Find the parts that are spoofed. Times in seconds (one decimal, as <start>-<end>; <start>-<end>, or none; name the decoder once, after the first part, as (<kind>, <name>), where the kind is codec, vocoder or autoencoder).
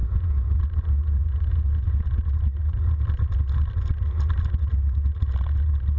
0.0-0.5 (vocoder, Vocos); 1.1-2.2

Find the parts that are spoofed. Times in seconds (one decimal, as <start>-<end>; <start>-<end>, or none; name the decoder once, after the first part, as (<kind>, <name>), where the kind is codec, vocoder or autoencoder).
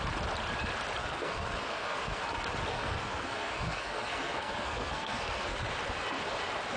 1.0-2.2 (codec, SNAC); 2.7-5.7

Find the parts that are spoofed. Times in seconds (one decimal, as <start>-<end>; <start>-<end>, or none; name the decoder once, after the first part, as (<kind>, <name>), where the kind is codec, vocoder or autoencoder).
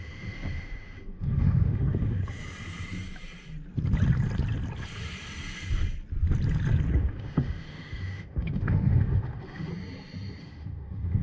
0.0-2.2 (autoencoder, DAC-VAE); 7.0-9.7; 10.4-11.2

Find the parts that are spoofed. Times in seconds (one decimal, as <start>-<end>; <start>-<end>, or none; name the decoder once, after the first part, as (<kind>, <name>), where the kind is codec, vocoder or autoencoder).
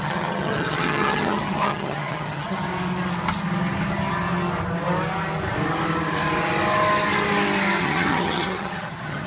0.0-2.7 (vocoder, HiFi-GAN); 7.8-9.3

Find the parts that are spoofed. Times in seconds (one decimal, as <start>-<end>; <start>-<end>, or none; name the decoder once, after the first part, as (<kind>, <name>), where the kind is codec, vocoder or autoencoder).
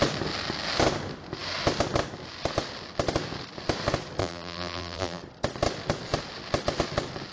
4.2-5.2 (vocoder, BigVGAN v2)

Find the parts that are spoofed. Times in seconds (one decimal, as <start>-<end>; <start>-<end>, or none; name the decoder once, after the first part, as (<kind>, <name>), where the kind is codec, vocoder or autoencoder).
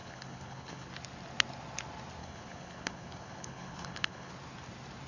0.0-0.9 (codec, HILCodec); 2.2-4.3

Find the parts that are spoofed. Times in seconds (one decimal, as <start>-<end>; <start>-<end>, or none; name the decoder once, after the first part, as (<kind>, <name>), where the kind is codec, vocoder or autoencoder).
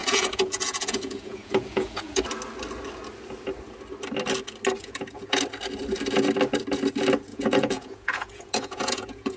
0.0-2.2 (vocoder, Vocos); 4.8-5.4; 7.3-9.4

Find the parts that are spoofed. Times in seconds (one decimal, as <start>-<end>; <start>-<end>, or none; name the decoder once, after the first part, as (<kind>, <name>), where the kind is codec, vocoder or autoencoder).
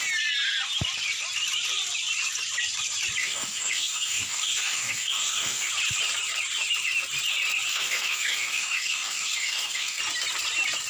3.2-5.7 (codec, DAC); 7.7-10.0